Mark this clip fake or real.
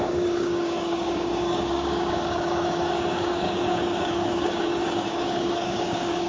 fake